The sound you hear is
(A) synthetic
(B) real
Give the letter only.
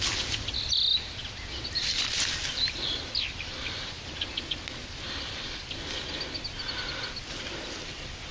B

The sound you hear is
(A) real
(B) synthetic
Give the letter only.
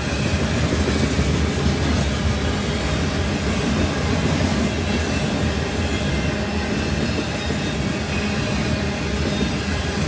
A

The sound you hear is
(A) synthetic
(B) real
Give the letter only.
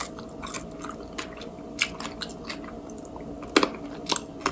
B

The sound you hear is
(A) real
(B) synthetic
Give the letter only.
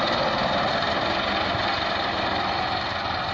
A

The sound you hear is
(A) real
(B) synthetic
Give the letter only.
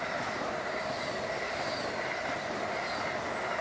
A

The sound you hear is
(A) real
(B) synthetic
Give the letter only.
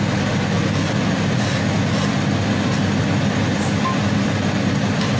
A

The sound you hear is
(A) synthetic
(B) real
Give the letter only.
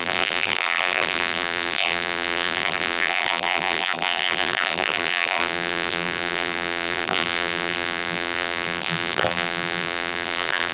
A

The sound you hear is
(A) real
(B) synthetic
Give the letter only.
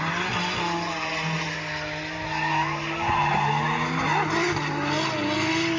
A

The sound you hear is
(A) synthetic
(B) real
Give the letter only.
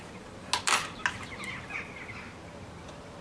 B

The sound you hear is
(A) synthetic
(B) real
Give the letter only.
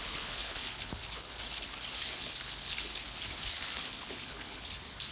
A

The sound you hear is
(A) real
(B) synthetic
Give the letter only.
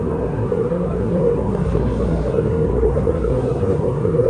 B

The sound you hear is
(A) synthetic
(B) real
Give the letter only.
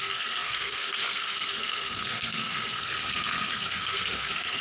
A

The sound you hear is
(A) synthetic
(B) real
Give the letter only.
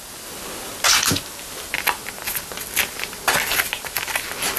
B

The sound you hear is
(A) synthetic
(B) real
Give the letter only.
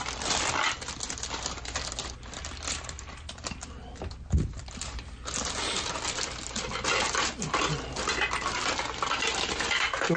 B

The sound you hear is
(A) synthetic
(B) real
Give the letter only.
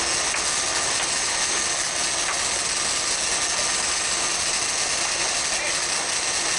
B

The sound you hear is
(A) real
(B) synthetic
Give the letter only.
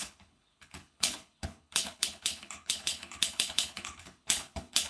B